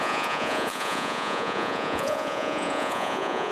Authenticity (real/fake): fake